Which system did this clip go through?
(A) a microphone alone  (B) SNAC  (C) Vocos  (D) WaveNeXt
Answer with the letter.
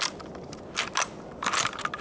A